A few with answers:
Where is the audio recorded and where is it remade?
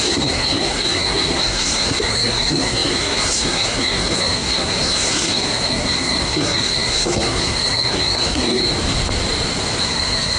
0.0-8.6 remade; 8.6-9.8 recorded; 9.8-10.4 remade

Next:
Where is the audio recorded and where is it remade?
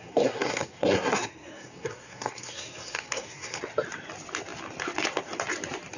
0.0-3.6 remade; 3.6-6.0 recorded